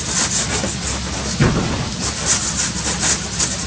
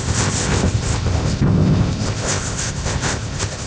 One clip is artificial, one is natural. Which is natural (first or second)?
first